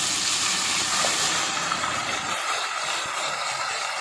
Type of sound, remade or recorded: remade